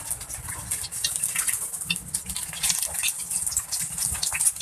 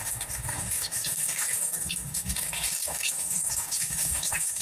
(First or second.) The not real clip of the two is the second